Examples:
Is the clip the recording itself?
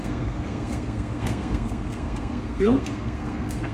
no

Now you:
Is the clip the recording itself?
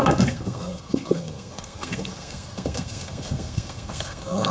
no